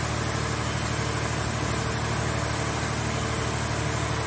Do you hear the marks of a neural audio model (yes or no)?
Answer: no